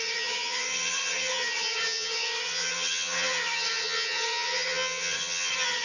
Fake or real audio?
fake